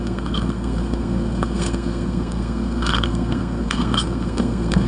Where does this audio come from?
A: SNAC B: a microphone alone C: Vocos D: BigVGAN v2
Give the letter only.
A